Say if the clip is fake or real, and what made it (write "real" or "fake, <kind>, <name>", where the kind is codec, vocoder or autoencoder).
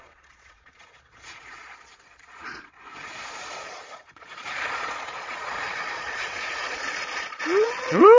fake, vocoder, Vocos